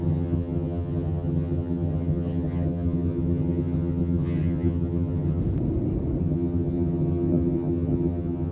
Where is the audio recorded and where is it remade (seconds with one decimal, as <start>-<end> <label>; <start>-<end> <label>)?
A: 0.0-5.4 remade; 5.4-6.2 recorded; 6.2-8.5 remade